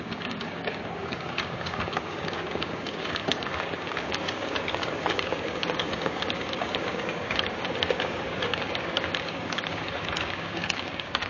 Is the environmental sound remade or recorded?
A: remade